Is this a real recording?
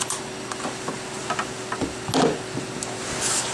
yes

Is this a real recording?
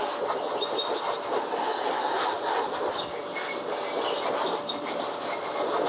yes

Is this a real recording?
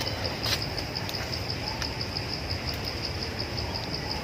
yes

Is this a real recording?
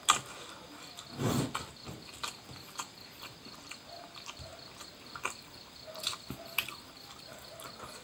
yes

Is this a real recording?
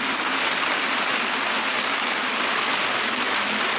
yes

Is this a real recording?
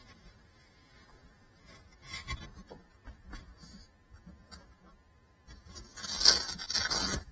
yes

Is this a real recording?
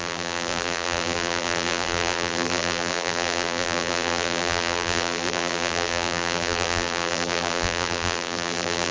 no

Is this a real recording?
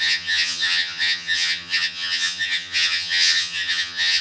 no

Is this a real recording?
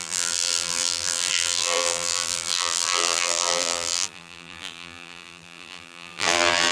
no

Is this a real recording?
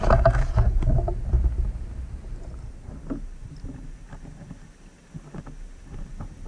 yes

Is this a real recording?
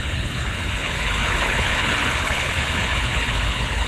no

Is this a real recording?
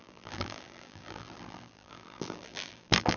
no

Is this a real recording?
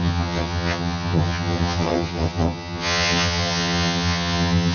no